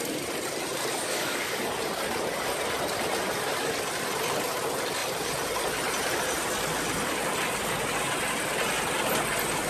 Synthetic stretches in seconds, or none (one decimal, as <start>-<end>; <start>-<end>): 0.9-1.6